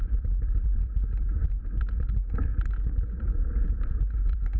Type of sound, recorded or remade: remade